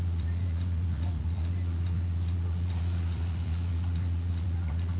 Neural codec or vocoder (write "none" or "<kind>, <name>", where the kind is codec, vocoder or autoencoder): vocoder, Vocos